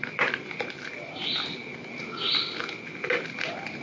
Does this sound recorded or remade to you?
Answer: recorded